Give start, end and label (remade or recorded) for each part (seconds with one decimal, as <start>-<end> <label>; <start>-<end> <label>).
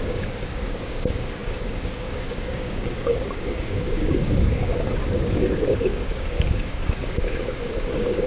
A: 0.0-8.3 remade